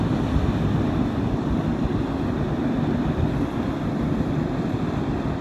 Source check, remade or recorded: recorded